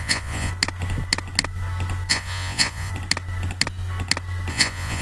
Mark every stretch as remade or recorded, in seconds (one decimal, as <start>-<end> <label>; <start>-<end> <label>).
0.0-0.5 remade; 0.5-2.1 recorded; 2.1-2.9 remade; 2.9-4.5 recorded; 4.5-5.0 remade

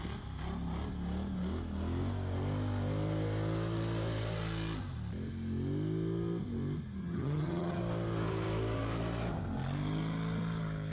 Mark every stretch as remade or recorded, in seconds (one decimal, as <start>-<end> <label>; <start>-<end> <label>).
0.0-7.0 recorded; 7.0-7.8 remade; 7.8-10.9 recorded

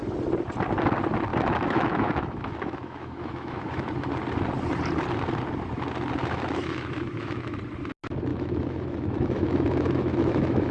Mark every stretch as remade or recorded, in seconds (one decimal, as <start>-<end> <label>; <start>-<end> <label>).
0.0-1.3 recorded; 1.3-3.9 remade; 3.9-6.2 recorded; 6.2-7.6 remade; 7.6-8.3 recorded; 8.3-10.7 remade

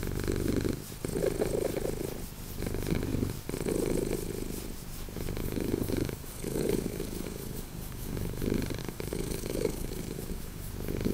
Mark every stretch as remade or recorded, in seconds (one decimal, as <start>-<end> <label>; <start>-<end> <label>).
0.0-5.4 recorded; 5.4-8.4 remade; 8.4-8.8 recorded; 8.8-10.7 remade; 10.7-11.1 recorded

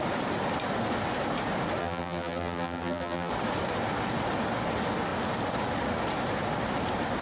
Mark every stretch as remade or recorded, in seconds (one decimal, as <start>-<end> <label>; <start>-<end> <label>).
0.0-1.8 recorded; 1.8-3.3 remade; 3.3-7.2 recorded

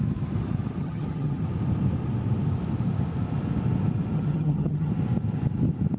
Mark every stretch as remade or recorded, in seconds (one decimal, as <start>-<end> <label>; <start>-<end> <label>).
0.0-0.8 recorded; 0.8-1.4 remade; 1.4-4.1 recorded; 4.1-4.9 remade; 4.9-6.0 recorded

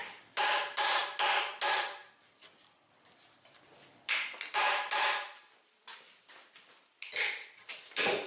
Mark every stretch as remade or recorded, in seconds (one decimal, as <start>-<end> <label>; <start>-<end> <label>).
0.0-0.5 remade; 0.5-2.0 recorded; 2.0-6.8 remade; 6.8-8.3 recorded